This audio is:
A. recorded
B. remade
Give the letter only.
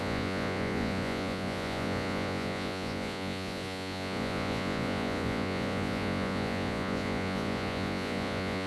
B